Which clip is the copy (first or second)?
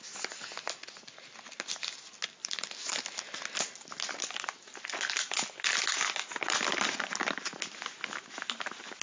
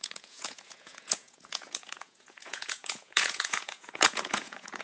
second